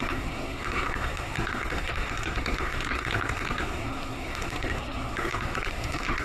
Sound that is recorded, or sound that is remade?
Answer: remade